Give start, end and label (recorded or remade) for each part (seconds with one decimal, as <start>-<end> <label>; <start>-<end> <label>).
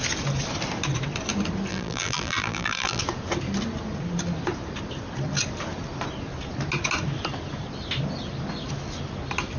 0.0-1.7 recorded; 1.7-3.0 remade; 3.0-9.6 recorded